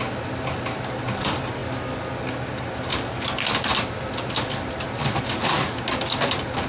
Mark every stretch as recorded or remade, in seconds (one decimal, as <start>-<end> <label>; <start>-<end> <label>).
0.0-6.7 recorded